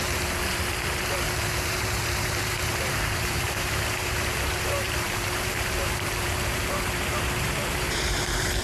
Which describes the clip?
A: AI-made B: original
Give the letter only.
A